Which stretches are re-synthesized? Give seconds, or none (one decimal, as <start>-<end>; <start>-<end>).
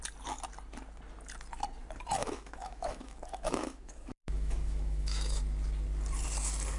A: 2.2-5.4